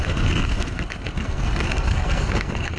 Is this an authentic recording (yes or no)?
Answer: no